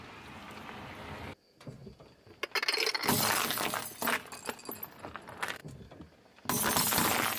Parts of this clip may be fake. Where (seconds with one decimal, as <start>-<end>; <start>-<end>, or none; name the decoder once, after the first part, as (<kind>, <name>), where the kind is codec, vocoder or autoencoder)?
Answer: none